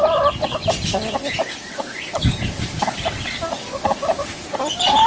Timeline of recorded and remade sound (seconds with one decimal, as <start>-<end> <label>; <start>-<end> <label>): 0.0-5.1 recorded